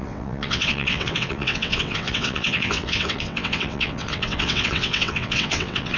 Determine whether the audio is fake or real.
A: fake